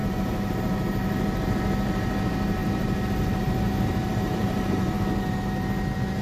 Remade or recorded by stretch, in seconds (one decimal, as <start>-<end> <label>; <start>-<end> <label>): 0.0-0.6 remade; 0.6-1.0 recorded; 1.0-1.6 remade; 1.6-2.6 recorded; 2.6-4.9 remade; 4.9-6.2 recorded